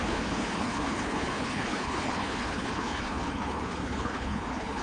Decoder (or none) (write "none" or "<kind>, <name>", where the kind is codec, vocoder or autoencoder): codec, HILCodec